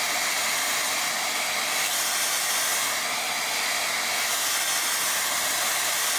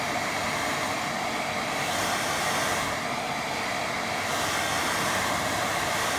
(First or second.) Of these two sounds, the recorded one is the first